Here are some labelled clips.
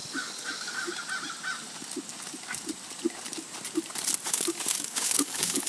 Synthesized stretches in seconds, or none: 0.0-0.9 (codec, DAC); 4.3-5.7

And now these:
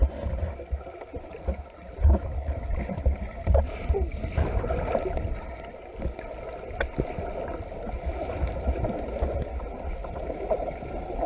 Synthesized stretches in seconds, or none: 10.0-10.7 (vocoder, BigVGAN v2)

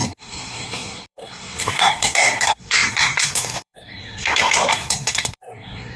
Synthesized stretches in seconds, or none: 0.0-6.0 (codec, SNAC)

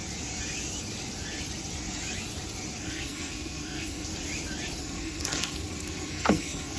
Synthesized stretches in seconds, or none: 2.8-4.1 (codec, SNAC); 4.8-6.8